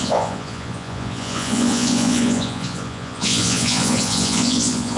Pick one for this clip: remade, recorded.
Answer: remade